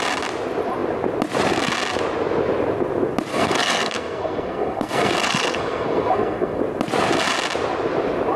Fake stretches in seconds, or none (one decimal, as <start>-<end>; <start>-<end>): 3.3-6.6